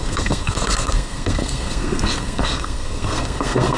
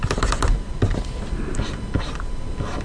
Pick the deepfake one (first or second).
first